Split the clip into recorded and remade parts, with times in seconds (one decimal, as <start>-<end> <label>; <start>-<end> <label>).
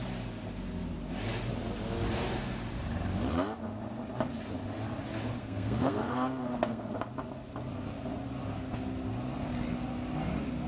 0.0-5.4 recorded; 5.4-6.9 remade; 6.9-10.7 recorded